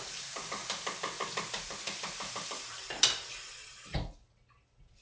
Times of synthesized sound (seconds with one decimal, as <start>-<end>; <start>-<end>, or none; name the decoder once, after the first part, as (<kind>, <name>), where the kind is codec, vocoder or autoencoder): none